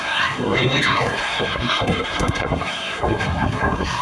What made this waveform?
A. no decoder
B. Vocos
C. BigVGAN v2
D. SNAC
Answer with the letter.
D